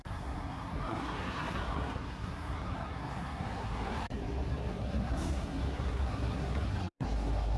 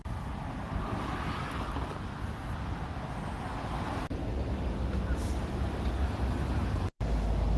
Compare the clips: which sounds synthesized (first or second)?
first